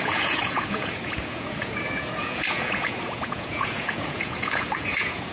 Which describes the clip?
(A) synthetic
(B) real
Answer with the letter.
A